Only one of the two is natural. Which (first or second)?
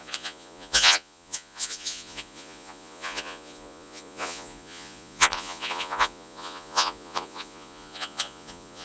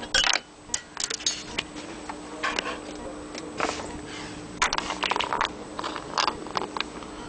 second